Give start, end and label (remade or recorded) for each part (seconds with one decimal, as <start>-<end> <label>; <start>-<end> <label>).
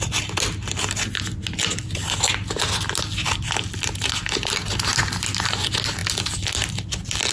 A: 0.0-7.3 recorded